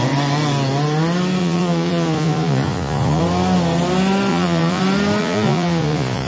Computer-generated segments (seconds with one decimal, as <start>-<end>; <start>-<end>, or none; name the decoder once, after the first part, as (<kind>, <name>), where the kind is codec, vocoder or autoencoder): 1.4-3.2 (vocoder, Vocos); 4.3-4.8; 5.2-6.3